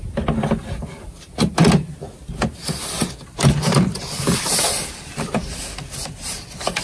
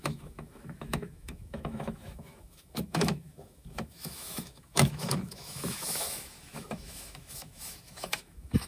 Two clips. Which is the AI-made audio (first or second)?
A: second